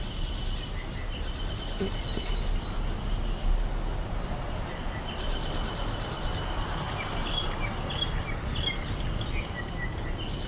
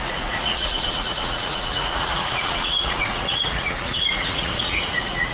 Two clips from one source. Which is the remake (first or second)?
second